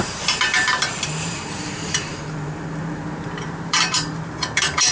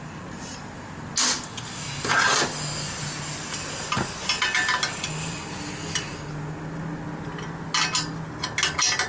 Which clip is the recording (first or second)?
second